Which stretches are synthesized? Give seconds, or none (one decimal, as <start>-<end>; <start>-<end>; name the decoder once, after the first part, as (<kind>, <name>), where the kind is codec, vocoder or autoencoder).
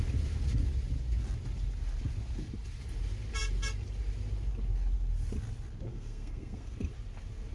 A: 5.9-6.9 (codec, SNAC)